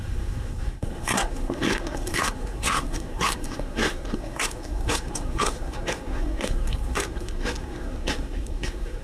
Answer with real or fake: fake